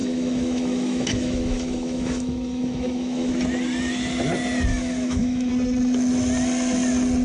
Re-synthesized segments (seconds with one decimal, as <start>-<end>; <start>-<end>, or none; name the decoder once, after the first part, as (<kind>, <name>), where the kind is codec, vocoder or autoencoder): 0.0-3.3 (autoencoder, DAC-VAE); 4.7-5.5